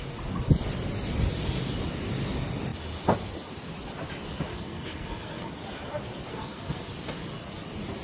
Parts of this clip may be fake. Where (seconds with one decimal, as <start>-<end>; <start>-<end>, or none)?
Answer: 4.5-5.5; 6.3-6.9